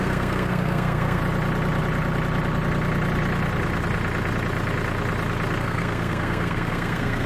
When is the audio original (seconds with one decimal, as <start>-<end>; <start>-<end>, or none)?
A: 1.2-5.6